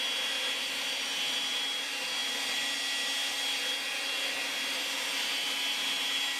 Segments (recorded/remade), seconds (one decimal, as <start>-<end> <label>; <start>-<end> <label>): 0.0-6.4 recorded